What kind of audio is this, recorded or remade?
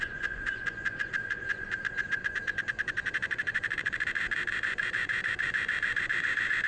remade